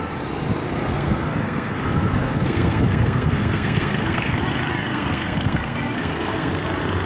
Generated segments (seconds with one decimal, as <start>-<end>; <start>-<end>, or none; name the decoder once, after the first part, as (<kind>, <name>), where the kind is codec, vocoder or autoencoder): 0.9-4.4 (codec, SNAC); 4.9-6.5